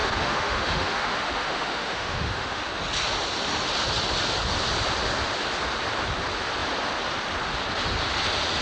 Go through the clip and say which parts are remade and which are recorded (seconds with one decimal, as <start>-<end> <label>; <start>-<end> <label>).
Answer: 0.0-2.7 remade; 2.7-8.6 recorded